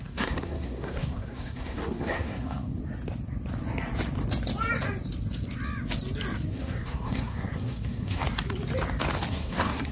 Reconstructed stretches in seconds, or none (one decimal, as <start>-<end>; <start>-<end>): 0.0-2.8; 6.5-8.2; 9.3-9.9